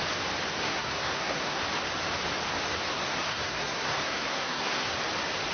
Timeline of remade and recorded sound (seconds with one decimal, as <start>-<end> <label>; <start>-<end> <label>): 0.0-0.6 recorded; 0.6-1.6 remade; 1.6-2.9 recorded; 2.9-5.0 remade; 5.0-5.5 recorded